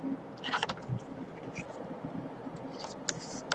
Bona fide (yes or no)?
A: yes